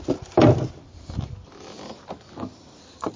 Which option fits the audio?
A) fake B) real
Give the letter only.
B